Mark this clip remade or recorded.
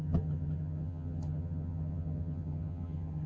remade